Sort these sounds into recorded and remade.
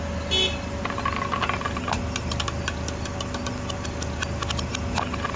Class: recorded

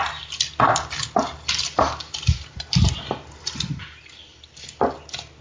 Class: recorded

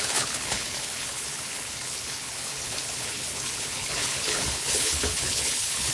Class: remade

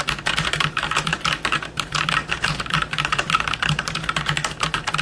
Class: remade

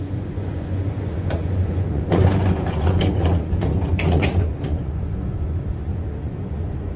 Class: remade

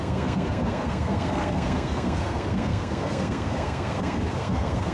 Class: remade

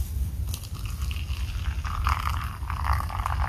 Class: recorded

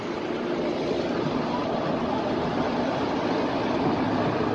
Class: recorded